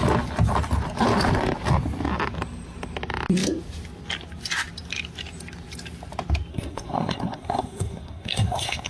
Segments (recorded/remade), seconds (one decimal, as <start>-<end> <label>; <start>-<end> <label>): 0.0-6.5 recorded; 6.5-8.9 remade